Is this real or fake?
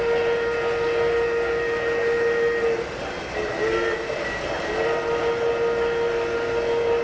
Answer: real